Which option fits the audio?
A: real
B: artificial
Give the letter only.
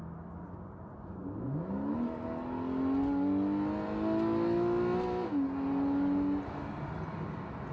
A